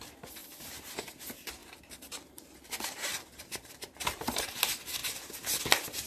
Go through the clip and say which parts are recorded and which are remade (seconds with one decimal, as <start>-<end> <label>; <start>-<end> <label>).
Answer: 0.0-0.4 recorded; 0.4-0.9 remade; 0.9-1.6 recorded; 1.6-4.6 remade; 4.6-5.0 recorded; 5.0-5.6 remade; 5.6-6.1 recorded